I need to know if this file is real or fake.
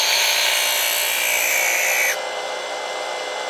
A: real